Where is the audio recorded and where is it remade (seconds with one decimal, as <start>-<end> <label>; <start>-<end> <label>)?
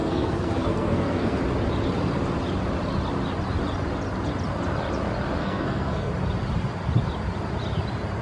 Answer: 0.0-1.4 remade; 1.4-5.4 recorded; 5.4-6.1 remade; 6.1-8.2 recorded